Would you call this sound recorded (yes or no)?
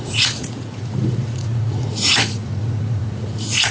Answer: no